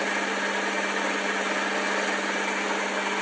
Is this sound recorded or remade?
recorded